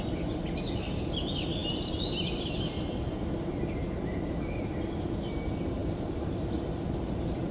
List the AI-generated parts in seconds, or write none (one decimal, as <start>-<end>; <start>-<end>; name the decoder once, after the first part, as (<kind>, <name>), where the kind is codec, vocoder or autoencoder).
5.8-6.5 (vocoder, BigVGAN v2)